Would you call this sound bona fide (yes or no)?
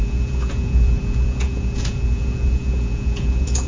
no